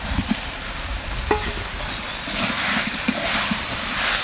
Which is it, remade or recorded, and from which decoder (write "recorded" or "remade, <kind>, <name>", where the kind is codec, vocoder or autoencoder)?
recorded